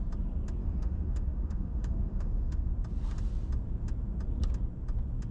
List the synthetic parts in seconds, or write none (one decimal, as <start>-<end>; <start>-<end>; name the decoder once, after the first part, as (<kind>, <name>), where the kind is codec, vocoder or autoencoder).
0.6-2.7 (autoencoder, DAC-VAE)